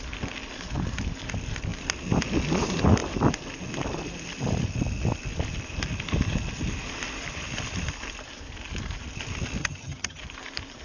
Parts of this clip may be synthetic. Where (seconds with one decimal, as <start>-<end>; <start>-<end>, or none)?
9.6-10.2